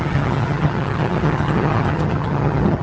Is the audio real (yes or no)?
no